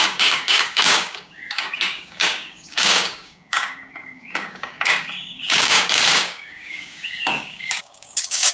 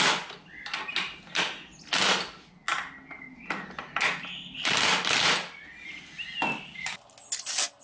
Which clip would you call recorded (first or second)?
second